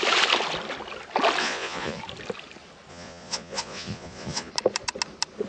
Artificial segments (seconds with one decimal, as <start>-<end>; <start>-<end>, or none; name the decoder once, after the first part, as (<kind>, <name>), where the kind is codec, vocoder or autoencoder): 1.4-2.0 (vocoder, Vocos); 2.9-4.5